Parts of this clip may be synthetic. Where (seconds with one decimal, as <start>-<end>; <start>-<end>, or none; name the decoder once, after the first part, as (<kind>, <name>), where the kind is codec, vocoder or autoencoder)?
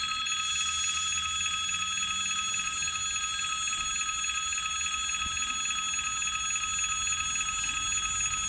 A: none